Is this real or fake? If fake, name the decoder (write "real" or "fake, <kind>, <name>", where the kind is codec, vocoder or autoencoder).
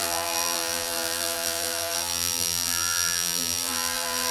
fake, vocoder, BigVGAN v2